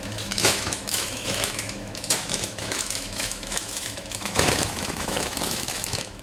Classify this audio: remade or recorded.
remade